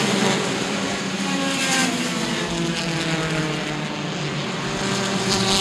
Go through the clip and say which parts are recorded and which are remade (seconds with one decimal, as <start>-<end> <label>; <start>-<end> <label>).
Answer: 0.0-1.8 remade; 1.8-4.3 recorded; 4.3-5.6 remade